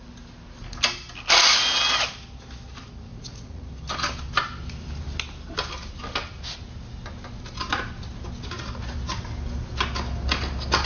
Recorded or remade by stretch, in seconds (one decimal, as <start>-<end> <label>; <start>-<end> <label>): 0.0-3.1 recorded; 3.1-3.7 remade; 3.7-10.9 recorded